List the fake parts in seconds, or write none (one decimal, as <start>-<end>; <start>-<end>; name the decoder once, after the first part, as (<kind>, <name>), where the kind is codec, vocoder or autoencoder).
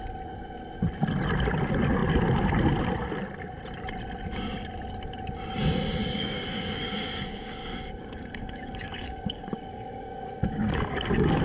6.0-11.4 (codec, DAC)